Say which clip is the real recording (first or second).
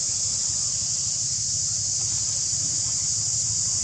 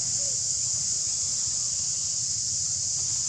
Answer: first